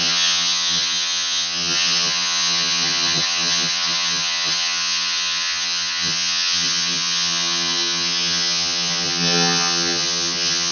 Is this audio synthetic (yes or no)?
yes